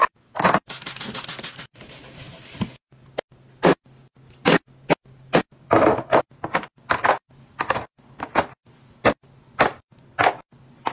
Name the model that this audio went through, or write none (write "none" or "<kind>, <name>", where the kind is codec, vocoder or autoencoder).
none